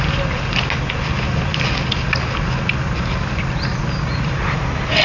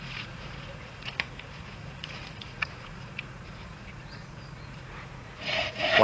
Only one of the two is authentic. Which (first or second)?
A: first